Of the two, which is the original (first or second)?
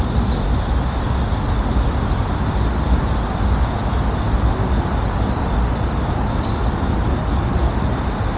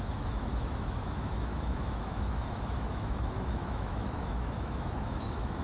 first